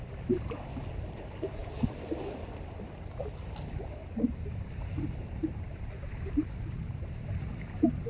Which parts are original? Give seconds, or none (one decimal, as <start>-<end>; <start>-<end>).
1.6-3.9

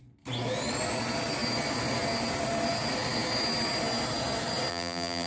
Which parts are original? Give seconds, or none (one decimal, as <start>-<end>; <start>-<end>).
0.0-4.7